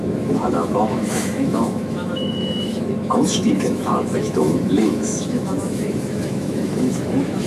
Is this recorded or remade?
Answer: remade